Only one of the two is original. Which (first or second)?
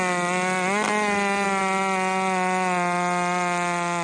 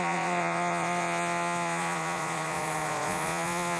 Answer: first